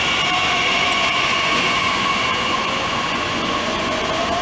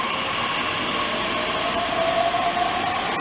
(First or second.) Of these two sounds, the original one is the second